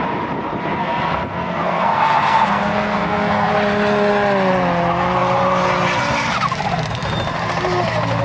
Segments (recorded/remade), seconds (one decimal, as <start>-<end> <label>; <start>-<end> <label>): 0.0-0.7 recorded; 0.7-3.5 remade; 3.5-8.2 recorded

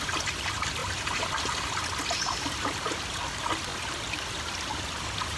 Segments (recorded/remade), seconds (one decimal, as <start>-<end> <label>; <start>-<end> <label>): 0.0-5.4 recorded

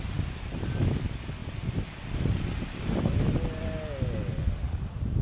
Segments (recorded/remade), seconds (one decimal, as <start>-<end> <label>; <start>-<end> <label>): 0.0-5.2 recorded

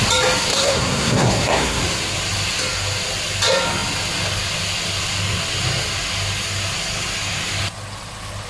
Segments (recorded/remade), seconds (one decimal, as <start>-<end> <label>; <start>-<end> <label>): 0.0-0.5 recorded; 0.5-1.8 remade; 1.8-8.5 recorded